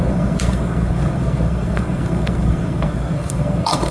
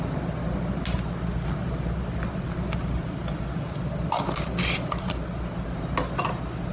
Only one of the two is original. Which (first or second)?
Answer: second